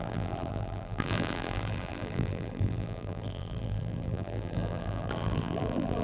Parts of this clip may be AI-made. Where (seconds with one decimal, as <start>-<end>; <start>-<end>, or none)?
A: 0.0-6.0